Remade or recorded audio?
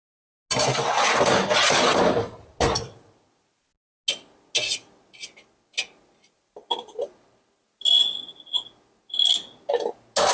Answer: recorded